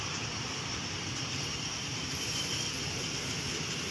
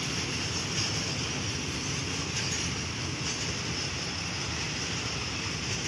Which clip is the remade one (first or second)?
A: first